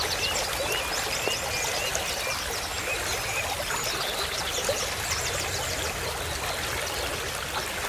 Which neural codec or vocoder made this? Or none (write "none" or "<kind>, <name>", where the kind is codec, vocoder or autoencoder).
none